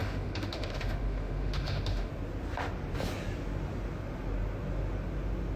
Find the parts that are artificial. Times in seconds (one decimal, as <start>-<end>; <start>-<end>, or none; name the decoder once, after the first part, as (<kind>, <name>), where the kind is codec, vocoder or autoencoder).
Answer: 0.0-2.1 (autoencoder, DAC-VAE)